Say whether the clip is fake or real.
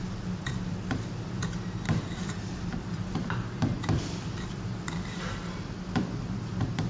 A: fake